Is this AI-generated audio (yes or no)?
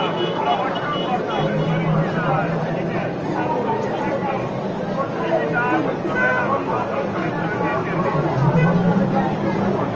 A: no